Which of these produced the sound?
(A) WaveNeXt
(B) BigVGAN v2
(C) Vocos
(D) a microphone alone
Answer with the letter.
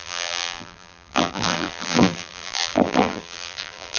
B